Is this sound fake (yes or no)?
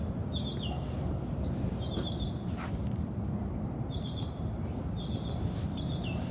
no